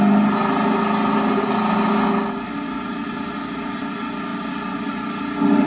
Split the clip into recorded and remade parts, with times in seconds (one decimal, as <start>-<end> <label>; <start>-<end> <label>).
0.0-4.3 recorded; 4.3-5.2 remade; 5.2-5.7 recorded